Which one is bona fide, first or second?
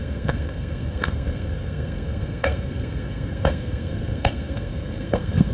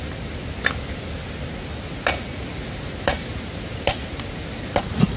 second